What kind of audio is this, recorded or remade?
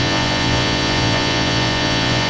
remade